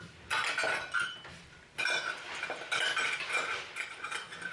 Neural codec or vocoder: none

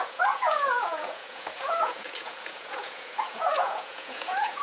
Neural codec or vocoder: vocoder, Vocos